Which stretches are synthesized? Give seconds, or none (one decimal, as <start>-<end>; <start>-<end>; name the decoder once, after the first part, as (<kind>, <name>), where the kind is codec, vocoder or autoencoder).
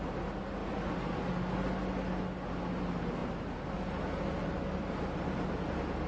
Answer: none